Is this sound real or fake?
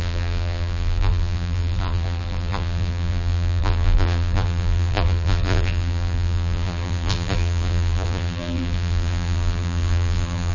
fake